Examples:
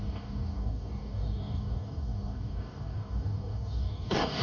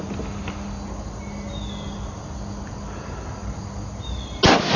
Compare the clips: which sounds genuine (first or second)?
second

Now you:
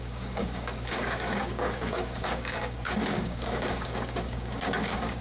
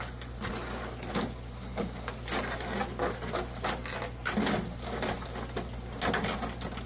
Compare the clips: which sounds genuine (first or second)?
second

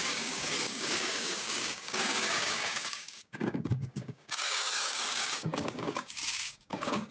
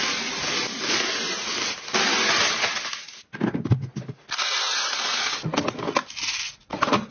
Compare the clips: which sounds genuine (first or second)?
second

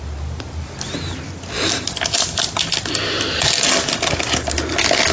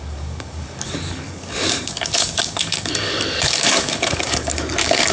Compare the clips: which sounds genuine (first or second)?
first